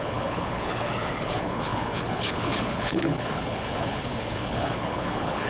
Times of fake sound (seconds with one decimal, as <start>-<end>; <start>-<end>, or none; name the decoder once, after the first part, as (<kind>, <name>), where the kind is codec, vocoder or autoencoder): 0.0-5.5 (codec, HILCodec)